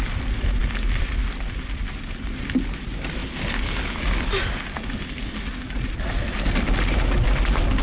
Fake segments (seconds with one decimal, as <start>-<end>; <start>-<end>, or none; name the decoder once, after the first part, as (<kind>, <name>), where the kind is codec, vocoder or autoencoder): none